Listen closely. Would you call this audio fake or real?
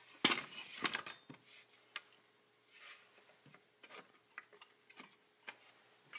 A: real